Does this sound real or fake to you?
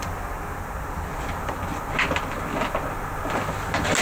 real